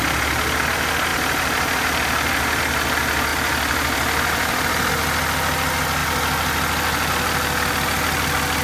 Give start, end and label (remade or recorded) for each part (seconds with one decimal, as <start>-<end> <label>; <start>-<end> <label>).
0.0-1.1 recorded; 1.1-2.6 remade; 2.6-3.3 recorded; 3.3-4.9 remade; 4.9-8.6 recorded